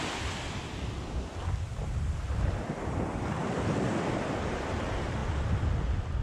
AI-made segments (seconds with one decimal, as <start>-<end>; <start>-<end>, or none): none